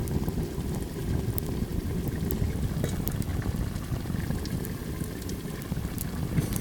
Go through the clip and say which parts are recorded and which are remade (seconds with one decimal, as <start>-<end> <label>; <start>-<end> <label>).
0.0-6.6 recorded